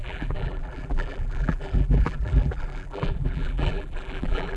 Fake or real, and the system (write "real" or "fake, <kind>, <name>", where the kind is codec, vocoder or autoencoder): fake, vocoder, BigVGAN v2